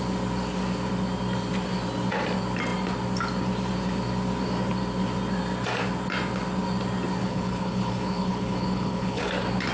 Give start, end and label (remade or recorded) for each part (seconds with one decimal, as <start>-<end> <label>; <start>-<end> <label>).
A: 0.0-7.2 recorded; 7.2-9.2 remade; 9.2-9.7 recorded